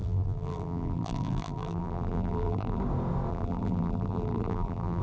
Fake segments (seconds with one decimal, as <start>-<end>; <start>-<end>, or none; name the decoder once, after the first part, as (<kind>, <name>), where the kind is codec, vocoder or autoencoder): 0.0-2.8 (vocoder, BigVGAN v2); 3.3-5.0